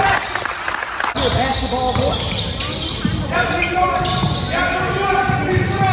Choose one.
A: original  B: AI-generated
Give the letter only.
A